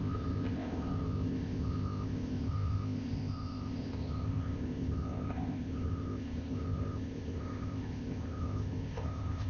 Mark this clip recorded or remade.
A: remade